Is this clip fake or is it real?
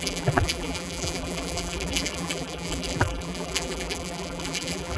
fake